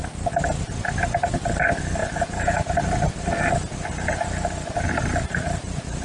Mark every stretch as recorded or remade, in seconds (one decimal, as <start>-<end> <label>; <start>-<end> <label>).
0.0-2.0 recorded; 2.0-2.7 remade; 2.7-6.0 recorded